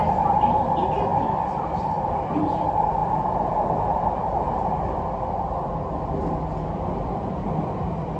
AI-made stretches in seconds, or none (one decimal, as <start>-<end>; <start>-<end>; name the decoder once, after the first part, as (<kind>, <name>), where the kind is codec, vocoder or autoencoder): 3.0-4.7 (vocoder, BigVGAN v2)